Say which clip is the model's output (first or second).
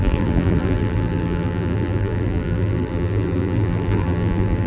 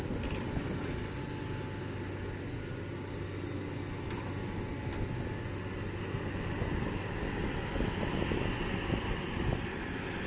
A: first